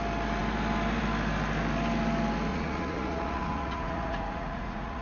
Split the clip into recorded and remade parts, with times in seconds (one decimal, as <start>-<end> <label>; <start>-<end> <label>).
0.0-2.5 recorded; 2.5-5.0 remade